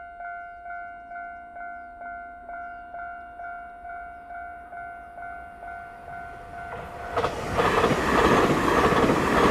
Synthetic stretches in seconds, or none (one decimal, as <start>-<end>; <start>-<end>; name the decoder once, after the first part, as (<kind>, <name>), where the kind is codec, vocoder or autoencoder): 2.4-4.7 (vocoder, Vocos)